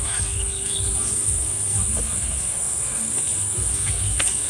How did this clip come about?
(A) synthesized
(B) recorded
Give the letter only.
A